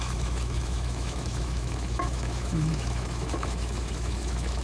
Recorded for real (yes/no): no